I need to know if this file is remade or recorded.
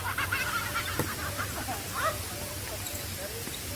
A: recorded